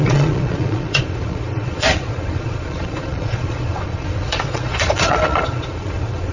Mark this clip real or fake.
fake